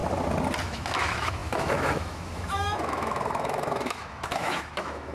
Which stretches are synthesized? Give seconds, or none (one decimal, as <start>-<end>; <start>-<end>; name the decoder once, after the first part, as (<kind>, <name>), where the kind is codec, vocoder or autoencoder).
0.6-5.1 (autoencoder, DAC-VAE)